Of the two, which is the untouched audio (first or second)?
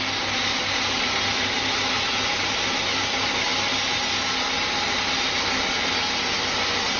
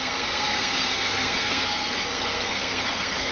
first